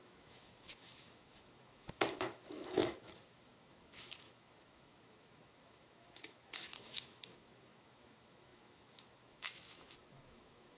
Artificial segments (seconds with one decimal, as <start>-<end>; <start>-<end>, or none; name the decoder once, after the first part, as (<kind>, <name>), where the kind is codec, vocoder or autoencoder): 0.0-10.8 (autoencoder, DAC-VAE)